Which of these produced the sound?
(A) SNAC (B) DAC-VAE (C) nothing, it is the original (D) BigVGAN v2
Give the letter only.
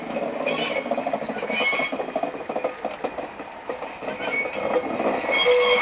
C